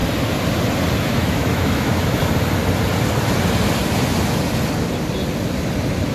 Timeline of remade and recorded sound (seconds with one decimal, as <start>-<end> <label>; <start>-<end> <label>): 0.0-1.0 recorded; 1.0-2.2 remade; 2.2-6.1 recorded